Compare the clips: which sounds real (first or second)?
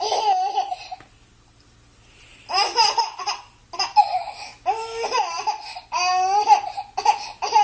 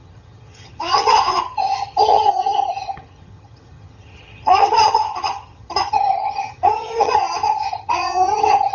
first